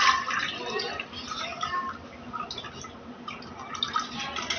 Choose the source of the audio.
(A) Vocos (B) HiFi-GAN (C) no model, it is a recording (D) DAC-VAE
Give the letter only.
C